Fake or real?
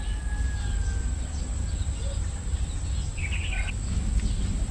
real